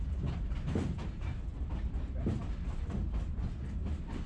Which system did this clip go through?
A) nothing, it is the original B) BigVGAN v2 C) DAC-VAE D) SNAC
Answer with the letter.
A